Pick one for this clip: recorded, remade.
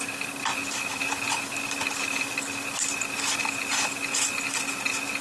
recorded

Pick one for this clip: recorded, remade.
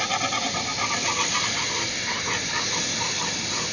recorded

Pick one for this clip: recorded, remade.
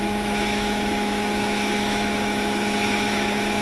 remade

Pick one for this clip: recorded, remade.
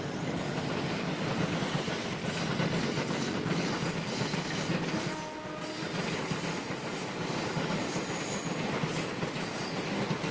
recorded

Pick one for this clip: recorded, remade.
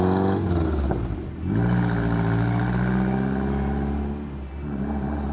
recorded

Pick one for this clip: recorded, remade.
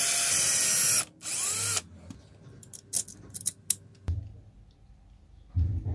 recorded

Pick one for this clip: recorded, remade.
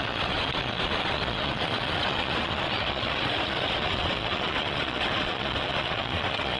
remade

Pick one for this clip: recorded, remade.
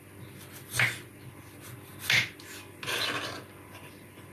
recorded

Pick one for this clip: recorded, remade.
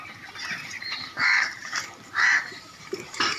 remade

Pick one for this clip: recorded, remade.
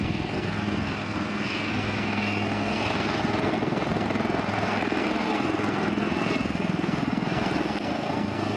remade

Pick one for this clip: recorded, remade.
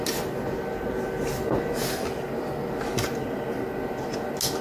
recorded